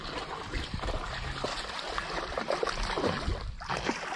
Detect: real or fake real